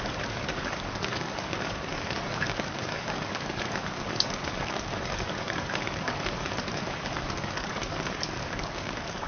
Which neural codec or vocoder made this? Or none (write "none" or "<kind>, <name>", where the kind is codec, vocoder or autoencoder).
codec, DAC